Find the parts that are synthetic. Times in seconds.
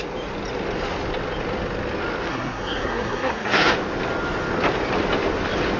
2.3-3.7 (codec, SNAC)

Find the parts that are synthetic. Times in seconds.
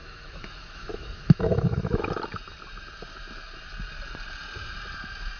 0.0-2.2 (autoencoder, DAC-VAE)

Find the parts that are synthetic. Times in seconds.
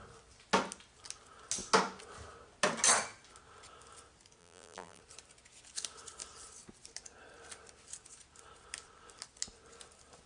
4.4-5.0 (vocoder, BigVGAN v2)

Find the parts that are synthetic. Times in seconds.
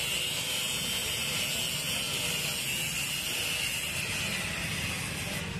none